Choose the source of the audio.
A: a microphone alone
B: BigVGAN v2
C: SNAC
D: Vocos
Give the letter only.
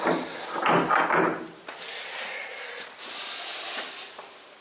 A